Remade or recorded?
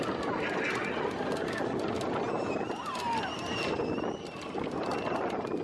recorded